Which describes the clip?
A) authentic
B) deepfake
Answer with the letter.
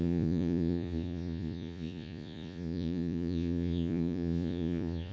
B